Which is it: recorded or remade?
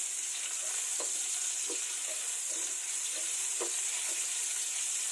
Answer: recorded